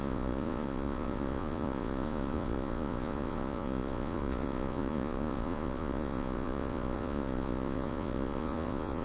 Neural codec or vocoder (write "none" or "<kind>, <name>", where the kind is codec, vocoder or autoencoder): vocoder, Vocos